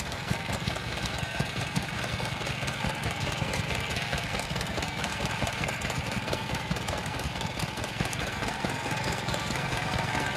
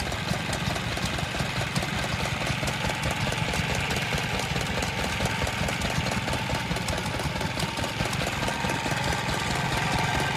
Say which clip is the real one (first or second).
second